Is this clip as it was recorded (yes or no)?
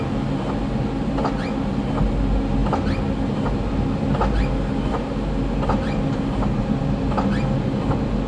yes